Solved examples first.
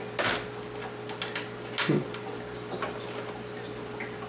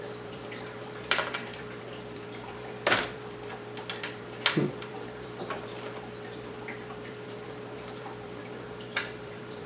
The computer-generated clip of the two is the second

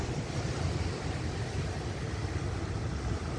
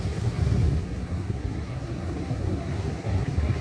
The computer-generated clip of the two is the second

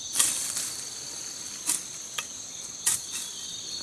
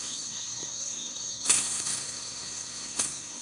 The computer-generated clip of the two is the second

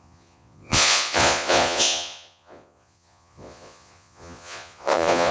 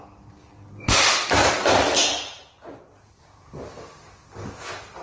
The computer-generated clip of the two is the first